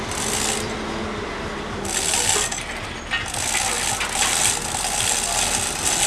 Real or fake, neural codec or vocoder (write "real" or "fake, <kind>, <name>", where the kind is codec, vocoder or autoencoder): real